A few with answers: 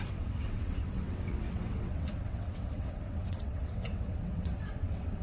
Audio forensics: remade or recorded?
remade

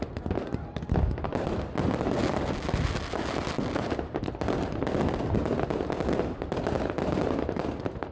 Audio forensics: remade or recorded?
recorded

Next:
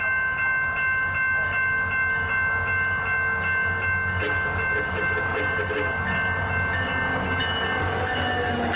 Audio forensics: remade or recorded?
recorded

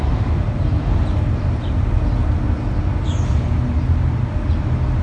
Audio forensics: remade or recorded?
recorded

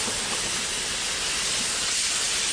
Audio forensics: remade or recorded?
recorded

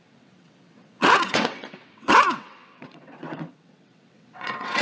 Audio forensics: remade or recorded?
remade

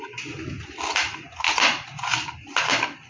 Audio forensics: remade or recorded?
recorded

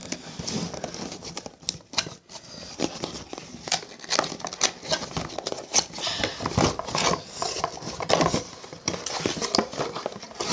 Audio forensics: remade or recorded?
recorded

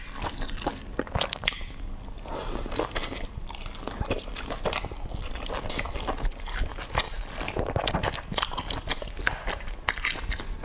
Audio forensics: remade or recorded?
recorded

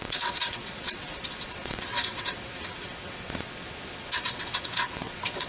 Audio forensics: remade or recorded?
remade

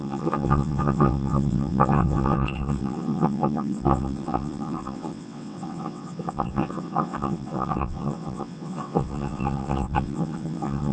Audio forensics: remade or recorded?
remade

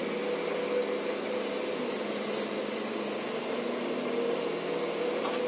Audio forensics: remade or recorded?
recorded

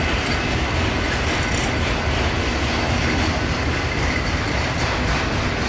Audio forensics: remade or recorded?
recorded